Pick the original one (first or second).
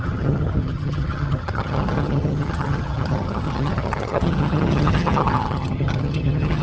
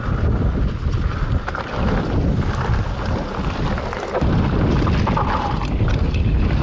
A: second